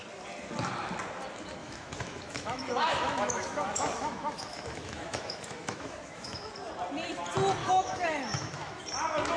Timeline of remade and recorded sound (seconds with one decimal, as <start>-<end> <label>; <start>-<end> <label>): 0.0-1.6 recorded; 1.6-6.5 remade; 6.5-7.6 recorded; 7.6-8.8 remade; 8.8-9.4 recorded